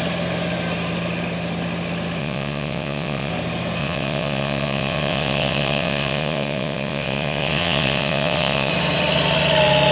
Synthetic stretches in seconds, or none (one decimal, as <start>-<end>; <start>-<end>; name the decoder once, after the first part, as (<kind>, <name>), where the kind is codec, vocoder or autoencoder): 2.2-3.3 (vocoder, WaveNeXt); 3.8-8.7